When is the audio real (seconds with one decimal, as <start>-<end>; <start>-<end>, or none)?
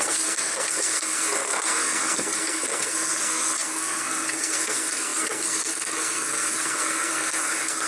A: none